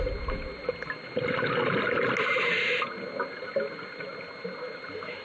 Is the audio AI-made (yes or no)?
no